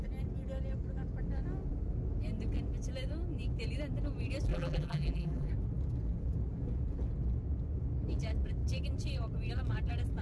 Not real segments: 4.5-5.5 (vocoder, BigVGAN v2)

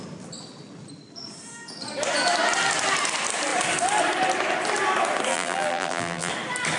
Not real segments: 5.3-6.3 (vocoder, BigVGAN v2)

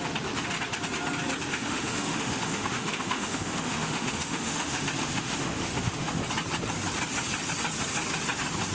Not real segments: 1.5-6.2 (autoencoder, DAC-VAE)

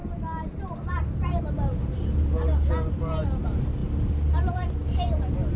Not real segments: 3.8-4.5 (vocoder, BigVGAN v2)

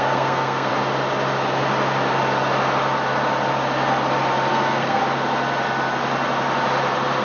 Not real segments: 0.0-0.7 (codec, SNAC); 4.5-5.0

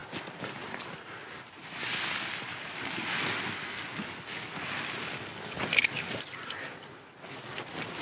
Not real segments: none

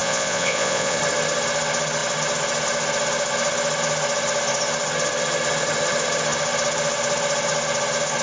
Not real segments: 0.0-1.0 (vocoder, Vocos)